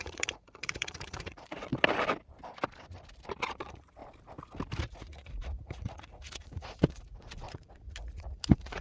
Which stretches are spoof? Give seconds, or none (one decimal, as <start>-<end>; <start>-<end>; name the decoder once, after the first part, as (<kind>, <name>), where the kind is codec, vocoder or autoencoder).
0.0-1.7 (vocoder, Vocos); 3.4-4.0; 4.8-8.8